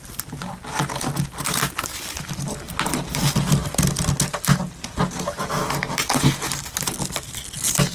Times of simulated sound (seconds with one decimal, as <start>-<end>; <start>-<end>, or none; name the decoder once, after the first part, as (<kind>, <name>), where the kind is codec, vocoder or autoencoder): none